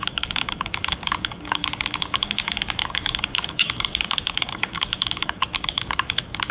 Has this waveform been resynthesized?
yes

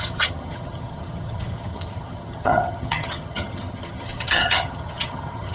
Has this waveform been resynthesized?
yes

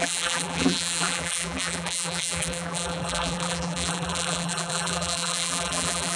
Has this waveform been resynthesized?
yes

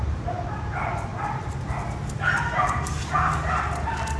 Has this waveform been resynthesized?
no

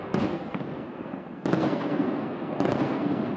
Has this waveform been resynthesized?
yes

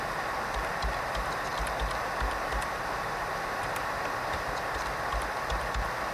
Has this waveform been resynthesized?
no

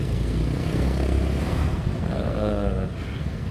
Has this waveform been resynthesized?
yes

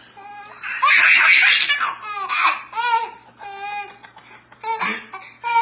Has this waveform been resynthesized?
no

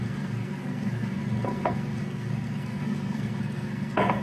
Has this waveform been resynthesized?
yes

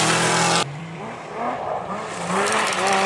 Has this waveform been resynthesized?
yes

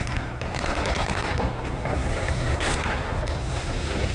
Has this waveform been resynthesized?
yes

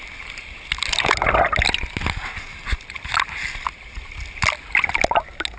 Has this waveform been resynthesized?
no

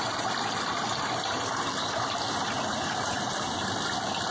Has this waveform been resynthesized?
no